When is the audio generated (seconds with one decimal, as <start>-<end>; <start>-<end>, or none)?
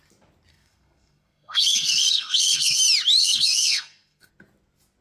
0.5-2.8; 3.2-4.3